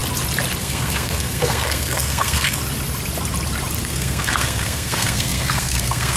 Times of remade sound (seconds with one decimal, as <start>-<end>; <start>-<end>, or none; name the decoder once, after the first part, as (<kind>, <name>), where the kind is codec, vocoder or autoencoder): 0.6-2.6 (codec, SNAC); 3.8-6.2